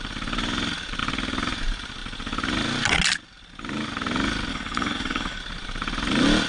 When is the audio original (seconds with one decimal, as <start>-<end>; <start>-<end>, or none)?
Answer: 0.0-4.5; 5.4-6.5